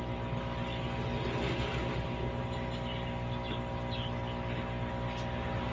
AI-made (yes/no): no